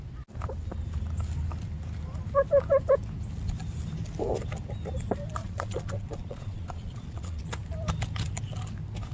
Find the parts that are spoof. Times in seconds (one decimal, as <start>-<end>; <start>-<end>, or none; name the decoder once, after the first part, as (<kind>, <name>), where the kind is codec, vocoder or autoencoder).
5.4-7.5 (vocoder, Vocos)